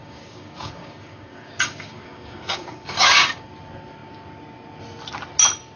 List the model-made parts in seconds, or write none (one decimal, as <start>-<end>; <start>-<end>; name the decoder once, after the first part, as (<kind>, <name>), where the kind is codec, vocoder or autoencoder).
0.0-3.5 (codec, DAC)